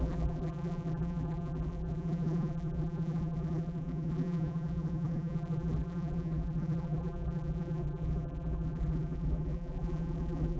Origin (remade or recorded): remade